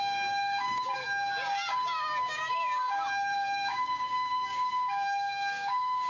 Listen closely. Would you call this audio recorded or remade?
remade